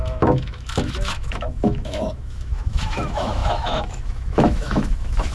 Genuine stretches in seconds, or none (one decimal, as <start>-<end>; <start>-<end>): none